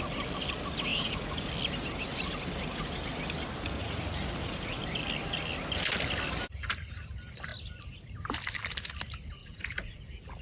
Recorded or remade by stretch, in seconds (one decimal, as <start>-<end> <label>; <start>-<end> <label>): 0.0-0.9 recorded; 0.9-1.5 remade; 1.5-3.8 recorded; 3.8-4.8 remade; 4.8-9.4 recorded; 9.4-10.0 remade; 10.0-10.4 recorded